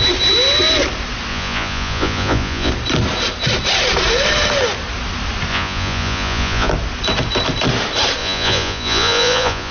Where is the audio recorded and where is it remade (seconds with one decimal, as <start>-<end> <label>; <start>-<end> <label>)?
0.0-1.3 recorded; 1.3-2.7 remade; 2.7-5.5 recorded; 5.5-6.7 remade; 6.7-8.2 recorded; 8.2-9.7 remade